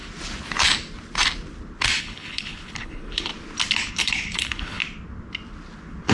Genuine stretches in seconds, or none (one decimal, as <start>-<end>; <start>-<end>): 0.0-2.0; 3.3-3.9; 4.8-6.1